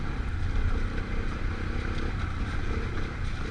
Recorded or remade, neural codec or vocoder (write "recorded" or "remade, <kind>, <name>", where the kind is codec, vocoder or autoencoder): recorded